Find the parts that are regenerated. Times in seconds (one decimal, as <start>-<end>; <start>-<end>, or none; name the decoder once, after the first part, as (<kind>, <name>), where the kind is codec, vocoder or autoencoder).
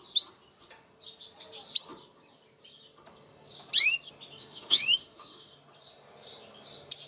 4.4-5.5 (autoencoder, DAC-VAE)